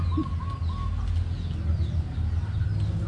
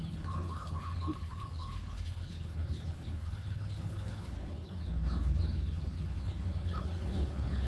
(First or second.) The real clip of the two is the first